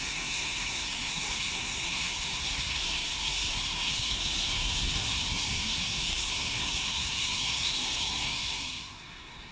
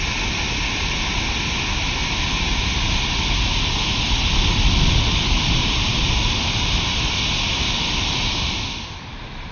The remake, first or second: first